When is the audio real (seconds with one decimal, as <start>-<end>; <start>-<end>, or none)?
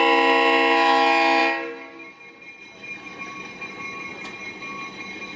0.0-5.4